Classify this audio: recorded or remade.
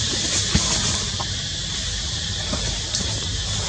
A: recorded